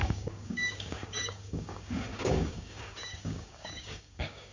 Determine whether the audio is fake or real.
fake